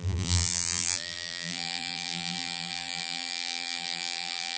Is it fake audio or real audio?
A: fake